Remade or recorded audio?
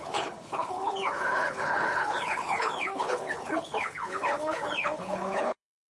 remade